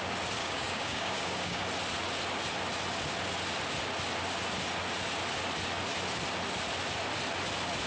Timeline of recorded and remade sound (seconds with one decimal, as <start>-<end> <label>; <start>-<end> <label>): 0.0-0.4 recorded; 0.4-1.6 remade; 1.6-7.9 recorded